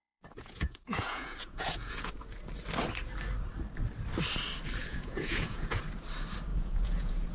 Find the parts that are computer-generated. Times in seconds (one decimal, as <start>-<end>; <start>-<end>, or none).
0.0-2.1; 4.8-5.8; 6.5-7.3